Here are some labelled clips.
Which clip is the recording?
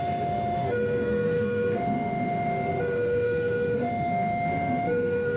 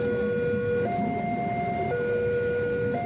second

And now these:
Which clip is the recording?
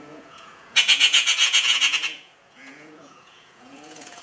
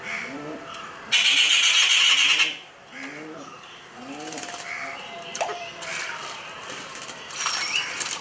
second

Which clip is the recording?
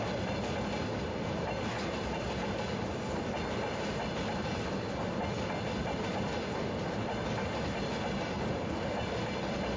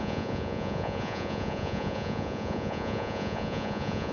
first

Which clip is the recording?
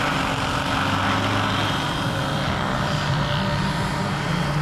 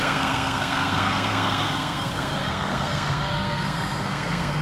first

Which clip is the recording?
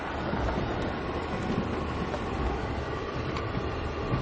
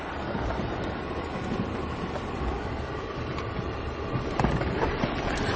first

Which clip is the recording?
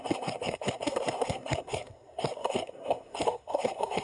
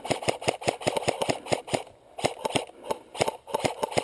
second